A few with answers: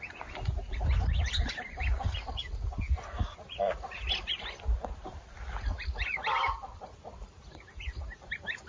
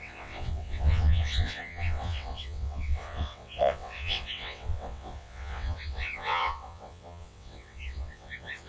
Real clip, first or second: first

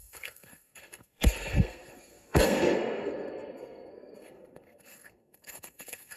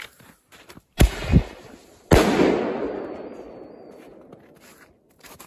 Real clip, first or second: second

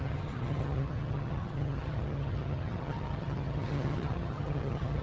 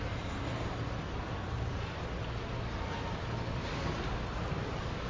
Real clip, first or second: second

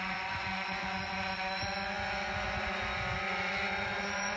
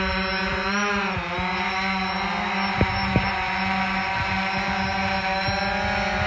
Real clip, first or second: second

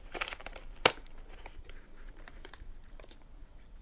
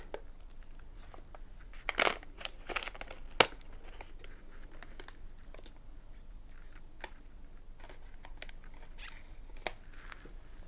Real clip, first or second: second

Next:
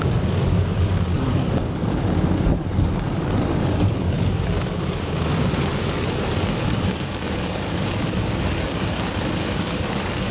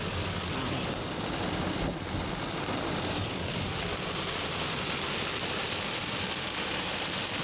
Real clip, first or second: second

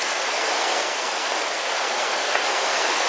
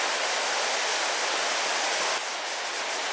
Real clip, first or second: second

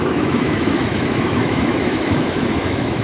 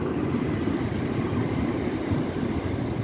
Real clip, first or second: second